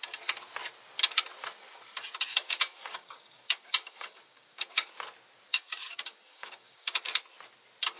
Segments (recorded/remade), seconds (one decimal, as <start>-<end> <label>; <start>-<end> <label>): 0.0-2.3 recorded; 2.3-4.9 remade; 4.9-5.5 recorded; 5.5-7.0 remade; 7.0-8.0 recorded